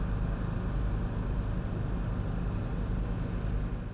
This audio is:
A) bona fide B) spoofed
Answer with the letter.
A